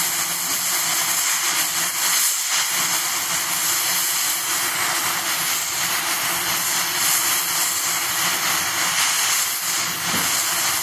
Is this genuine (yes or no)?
yes